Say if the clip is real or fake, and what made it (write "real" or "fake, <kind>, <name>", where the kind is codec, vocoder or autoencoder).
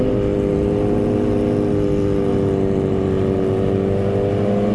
real